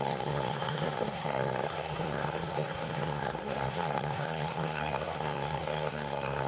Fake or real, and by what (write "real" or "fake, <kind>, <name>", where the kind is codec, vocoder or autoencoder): fake, codec, SNAC